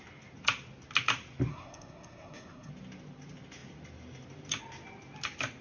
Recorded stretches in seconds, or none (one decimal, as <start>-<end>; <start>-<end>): 0.0-1.5; 2.7-5.6